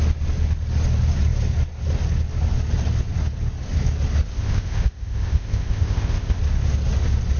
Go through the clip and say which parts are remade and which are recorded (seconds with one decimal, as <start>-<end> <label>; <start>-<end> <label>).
0.0-4.3 recorded; 4.3-6.4 remade; 6.4-7.4 recorded